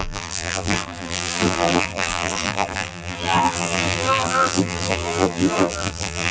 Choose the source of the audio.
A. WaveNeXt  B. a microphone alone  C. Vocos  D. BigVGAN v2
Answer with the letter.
D